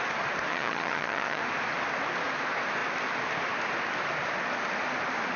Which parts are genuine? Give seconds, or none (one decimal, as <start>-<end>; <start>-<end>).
0.0-0.5; 1.4-5.4